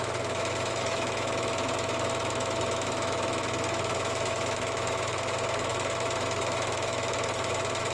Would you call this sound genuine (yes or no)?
no